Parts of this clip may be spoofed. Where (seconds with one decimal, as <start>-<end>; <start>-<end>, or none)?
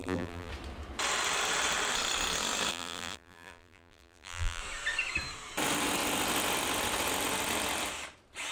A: 0.0-0.5; 2.7-4.6